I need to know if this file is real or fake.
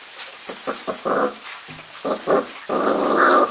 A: real